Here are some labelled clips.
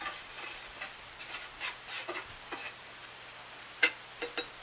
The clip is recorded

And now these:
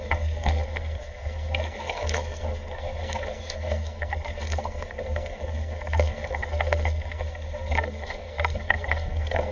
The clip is remade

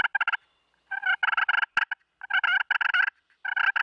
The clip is recorded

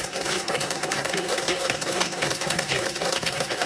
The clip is remade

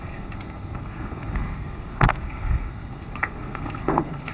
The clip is remade